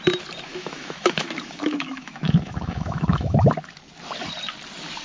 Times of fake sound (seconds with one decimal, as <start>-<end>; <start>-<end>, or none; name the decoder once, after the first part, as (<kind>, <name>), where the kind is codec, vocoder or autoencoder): 0.5-3.5 (autoencoder, DAC-VAE)